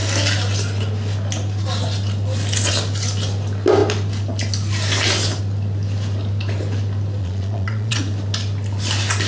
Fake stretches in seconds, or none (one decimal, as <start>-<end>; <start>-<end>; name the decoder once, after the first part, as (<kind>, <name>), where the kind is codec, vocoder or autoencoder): 7.2-8.0 (vocoder, Vocos)